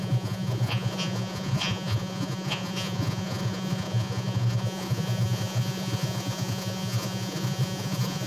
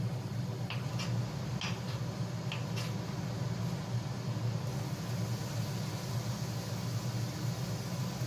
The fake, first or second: first